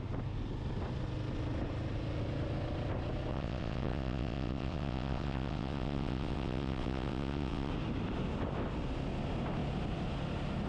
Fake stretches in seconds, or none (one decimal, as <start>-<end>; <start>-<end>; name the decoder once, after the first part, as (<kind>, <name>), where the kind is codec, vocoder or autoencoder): 3.3-7.7 (vocoder, WaveNeXt)